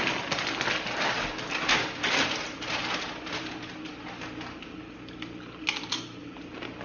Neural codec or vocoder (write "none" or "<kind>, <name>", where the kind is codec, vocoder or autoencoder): none